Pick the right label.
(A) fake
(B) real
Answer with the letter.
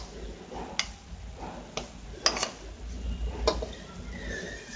B